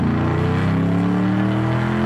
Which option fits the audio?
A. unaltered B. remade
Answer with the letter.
A